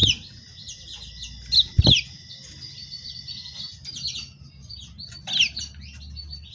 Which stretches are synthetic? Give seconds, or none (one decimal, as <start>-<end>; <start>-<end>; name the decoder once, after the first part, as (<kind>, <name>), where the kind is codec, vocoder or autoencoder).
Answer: none